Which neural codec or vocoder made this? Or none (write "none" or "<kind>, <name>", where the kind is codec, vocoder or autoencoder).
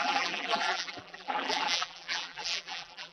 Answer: vocoder, BigVGAN v2